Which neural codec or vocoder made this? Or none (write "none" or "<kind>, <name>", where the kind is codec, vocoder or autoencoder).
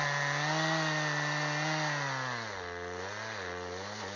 none